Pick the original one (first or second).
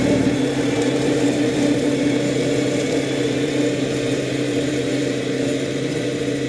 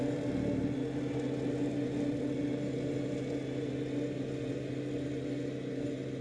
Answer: second